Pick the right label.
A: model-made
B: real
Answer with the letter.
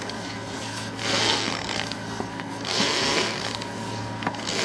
A